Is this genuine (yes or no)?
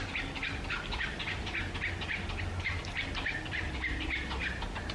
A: yes